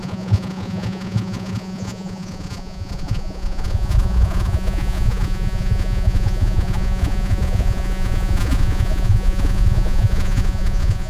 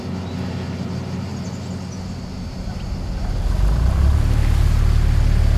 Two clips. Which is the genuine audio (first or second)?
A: second